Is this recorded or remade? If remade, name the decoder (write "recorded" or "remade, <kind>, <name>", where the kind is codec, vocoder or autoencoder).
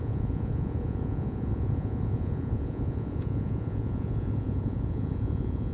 remade, vocoder, Vocos